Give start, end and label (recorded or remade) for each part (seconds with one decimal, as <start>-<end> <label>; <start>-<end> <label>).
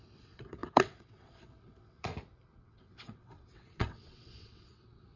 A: 0.0-2.1 remade; 2.1-2.6 recorded; 2.6-5.2 remade